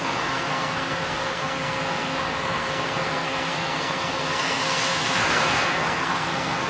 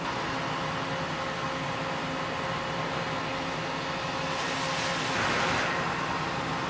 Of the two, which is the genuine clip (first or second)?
second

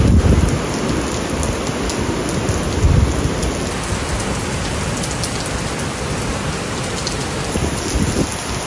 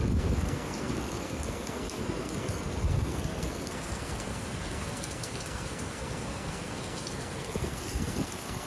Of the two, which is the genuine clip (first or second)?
first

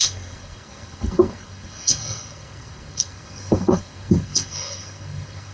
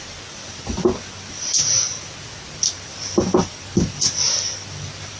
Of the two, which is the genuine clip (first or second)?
second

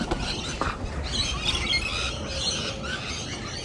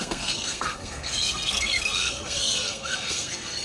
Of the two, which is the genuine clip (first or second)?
first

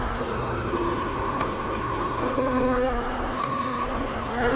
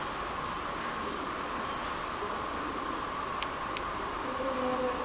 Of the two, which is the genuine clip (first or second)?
second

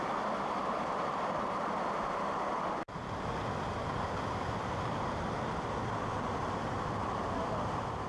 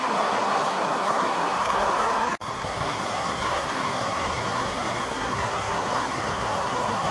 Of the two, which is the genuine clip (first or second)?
first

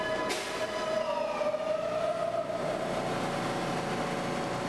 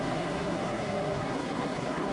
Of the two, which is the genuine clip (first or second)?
first